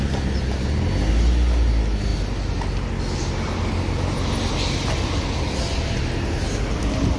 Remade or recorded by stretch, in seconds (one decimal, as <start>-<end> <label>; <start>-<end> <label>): 0.0-7.2 recorded